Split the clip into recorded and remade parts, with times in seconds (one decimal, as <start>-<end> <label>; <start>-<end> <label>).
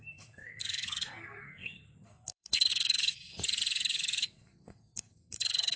0.0-5.8 remade